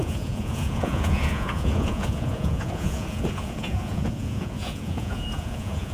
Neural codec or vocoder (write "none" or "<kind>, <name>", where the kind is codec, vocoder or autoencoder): vocoder, Vocos